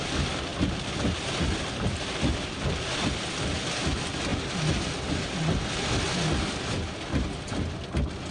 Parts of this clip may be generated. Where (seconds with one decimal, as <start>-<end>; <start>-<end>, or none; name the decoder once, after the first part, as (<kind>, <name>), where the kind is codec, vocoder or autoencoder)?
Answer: none